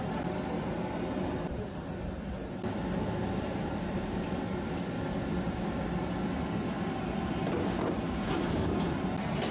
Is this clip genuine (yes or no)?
yes